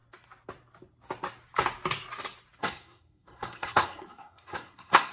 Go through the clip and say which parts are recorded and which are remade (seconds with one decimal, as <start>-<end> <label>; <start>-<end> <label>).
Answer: 0.0-2.6 recorded; 2.6-5.1 remade